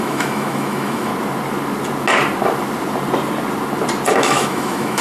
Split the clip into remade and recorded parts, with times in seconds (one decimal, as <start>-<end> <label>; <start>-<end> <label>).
0.0-1.1 remade; 1.1-4.1 recorded; 4.1-5.0 remade